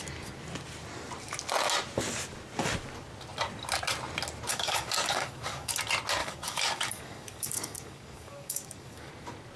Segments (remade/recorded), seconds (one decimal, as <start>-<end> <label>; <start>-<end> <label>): 0.0-4.5 recorded; 4.5-5.7 remade; 5.7-6.2 recorded; 6.2-9.1 remade; 9.1-9.6 recorded